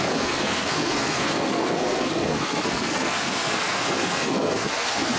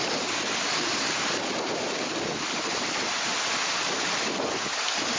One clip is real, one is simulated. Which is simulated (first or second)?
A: first